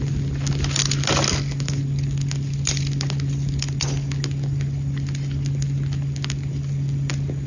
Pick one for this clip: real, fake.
real